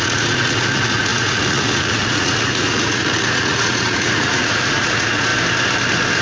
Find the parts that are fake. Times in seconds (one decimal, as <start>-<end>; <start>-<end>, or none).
0.0-5.3

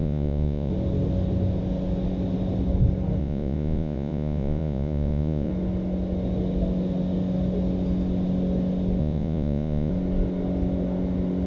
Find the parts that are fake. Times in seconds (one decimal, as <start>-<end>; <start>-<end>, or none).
0.0-0.7; 3.2-5.5; 9.0-9.9

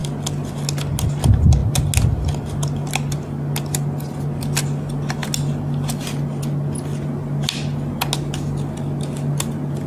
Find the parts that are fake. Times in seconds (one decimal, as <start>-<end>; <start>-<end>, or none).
none

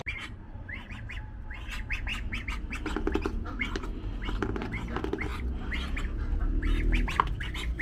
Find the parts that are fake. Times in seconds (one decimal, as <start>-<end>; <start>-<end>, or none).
none